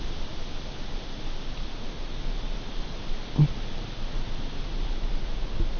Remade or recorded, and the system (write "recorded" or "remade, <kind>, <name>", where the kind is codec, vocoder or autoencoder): recorded